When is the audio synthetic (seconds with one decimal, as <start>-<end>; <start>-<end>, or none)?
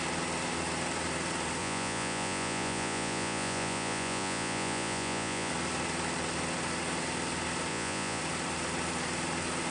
1.6-5.5; 7.7-8.2